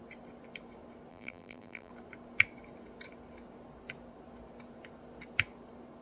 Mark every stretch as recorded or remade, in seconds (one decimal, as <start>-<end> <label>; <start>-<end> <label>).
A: 0.0-1.1 recorded; 1.1-1.9 remade; 1.9-6.0 recorded